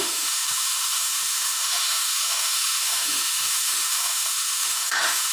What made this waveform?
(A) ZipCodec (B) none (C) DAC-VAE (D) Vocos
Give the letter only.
C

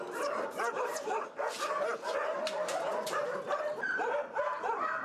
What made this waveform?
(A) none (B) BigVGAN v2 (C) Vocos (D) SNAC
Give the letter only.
B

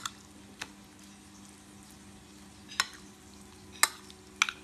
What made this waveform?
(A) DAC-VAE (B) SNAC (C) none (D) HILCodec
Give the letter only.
C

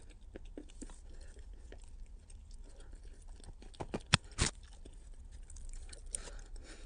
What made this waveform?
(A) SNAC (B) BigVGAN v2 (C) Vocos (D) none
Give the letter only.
D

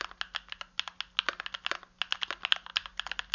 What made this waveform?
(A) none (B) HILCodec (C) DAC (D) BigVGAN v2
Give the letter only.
A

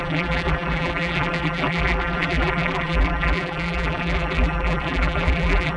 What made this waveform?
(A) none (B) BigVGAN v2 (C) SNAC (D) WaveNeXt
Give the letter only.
B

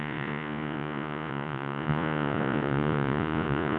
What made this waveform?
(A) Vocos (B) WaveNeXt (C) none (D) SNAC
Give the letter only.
A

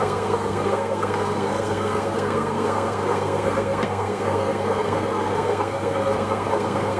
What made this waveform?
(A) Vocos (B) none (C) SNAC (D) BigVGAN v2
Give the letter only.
C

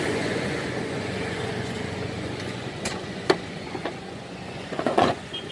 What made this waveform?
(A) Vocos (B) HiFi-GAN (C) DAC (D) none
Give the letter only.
A